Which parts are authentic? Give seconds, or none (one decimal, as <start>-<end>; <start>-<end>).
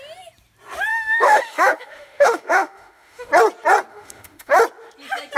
0.0-0.9; 3.3-3.9; 4.6-5.4